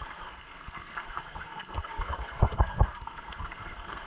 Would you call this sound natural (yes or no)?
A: no